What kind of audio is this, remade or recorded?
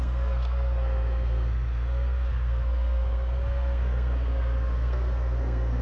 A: remade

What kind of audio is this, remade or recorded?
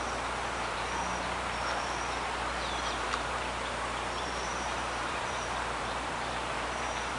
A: remade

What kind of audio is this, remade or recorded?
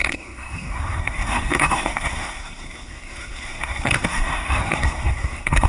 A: remade